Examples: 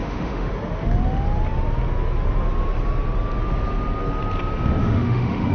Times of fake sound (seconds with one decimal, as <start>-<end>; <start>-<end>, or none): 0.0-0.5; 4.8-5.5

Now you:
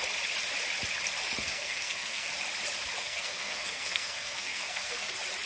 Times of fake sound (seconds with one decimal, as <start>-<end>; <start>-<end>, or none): 1.4-2.3; 3.0-5.1

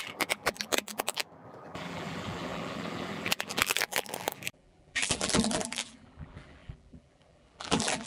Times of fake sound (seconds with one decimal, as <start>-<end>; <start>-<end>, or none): 0.0-8.1

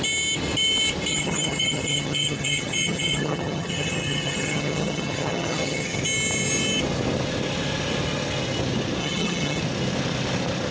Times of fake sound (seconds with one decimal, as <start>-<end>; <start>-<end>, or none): 1.1-6.0; 9.0-9.6

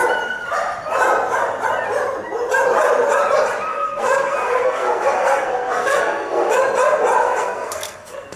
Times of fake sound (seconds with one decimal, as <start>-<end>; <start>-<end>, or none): 3.7-6.6; 7.2-8.4